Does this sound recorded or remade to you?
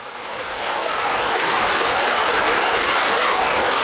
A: remade